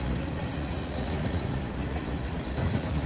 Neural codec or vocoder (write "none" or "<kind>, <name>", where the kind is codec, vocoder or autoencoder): vocoder, Vocos